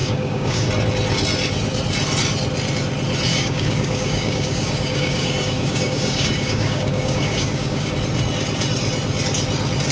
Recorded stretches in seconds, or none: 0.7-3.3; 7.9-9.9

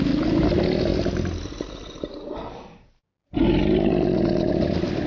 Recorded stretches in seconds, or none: 0.0-5.1

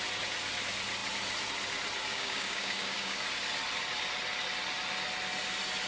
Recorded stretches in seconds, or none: 0.0-2.1; 3.2-5.9

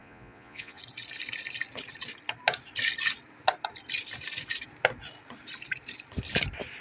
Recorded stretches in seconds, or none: 0.8-6.8

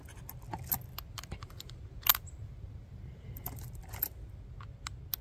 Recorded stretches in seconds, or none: 0.0-2.1; 3.8-5.2

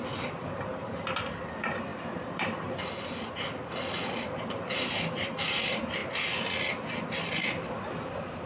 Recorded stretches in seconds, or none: 0.0-1.9; 3.1-8.5